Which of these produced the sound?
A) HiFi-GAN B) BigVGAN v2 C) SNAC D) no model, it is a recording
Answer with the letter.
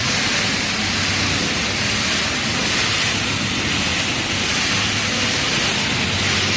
D